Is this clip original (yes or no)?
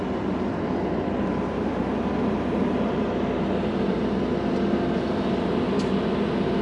no